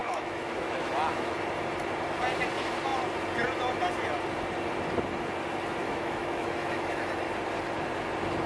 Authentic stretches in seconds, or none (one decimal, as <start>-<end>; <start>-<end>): 0.9-5.8; 7.1-8.5